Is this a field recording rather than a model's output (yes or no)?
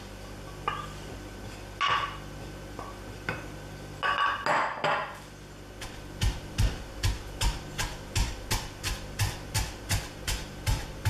yes